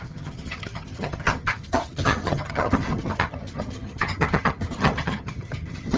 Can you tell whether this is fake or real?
fake